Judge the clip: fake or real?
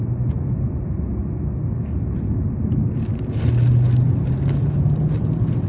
real